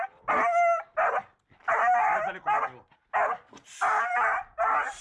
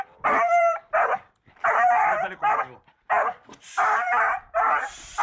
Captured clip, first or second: first